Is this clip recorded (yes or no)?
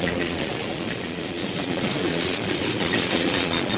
no